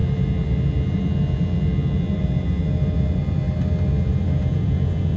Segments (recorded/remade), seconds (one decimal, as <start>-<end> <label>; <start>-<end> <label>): 0.0-4.5 recorded; 4.5-5.2 remade

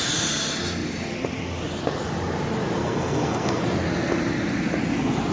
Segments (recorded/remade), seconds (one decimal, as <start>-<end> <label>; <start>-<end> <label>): 0.0-2.8 recorded; 2.8-3.6 remade; 3.6-5.3 recorded

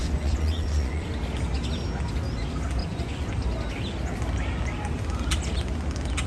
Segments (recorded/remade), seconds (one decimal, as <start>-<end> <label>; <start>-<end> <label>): 0.0-1.1 remade; 1.1-2.8 recorded; 2.8-3.3 remade; 3.3-6.3 recorded

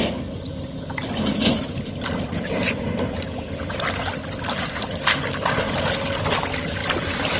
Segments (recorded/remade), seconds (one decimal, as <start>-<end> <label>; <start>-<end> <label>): 0.0-1.5 recorded; 1.5-5.7 remade; 5.7-6.8 recorded; 6.8-7.4 remade

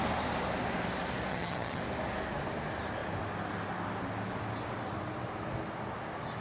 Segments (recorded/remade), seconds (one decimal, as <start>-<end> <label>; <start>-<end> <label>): 0.0-1.3 recorded; 1.3-1.8 remade; 1.8-6.4 recorded

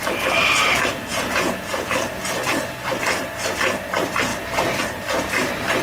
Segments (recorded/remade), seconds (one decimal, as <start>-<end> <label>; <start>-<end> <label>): 0.0-1.1 recorded; 1.1-1.8 remade; 1.8-5.8 recorded